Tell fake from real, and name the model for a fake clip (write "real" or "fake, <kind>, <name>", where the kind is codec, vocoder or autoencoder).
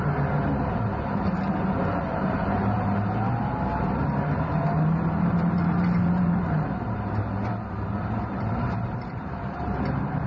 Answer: fake, vocoder, BigVGAN v2